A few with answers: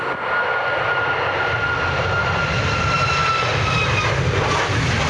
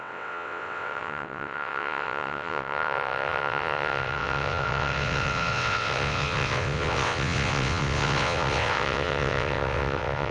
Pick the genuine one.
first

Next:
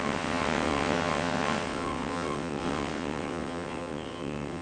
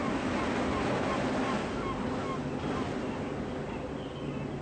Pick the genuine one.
second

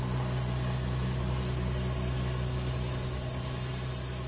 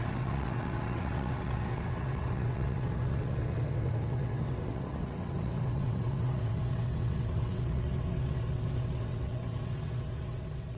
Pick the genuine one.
first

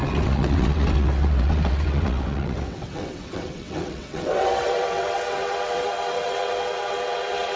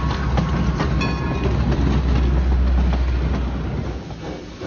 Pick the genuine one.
second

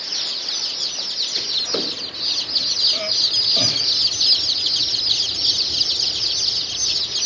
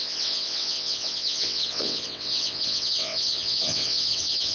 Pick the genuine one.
first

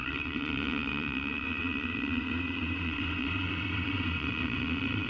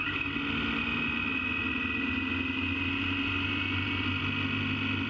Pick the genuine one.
second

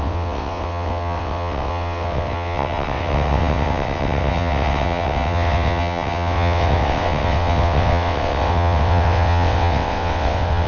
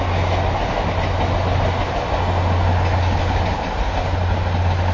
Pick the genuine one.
second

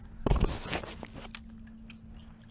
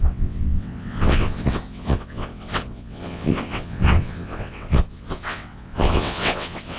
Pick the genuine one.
first